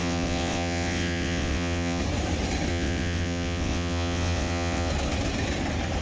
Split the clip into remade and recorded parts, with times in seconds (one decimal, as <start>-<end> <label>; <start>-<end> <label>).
0.0-2.0 remade; 2.0-2.7 recorded; 2.7-4.9 remade; 4.9-6.0 recorded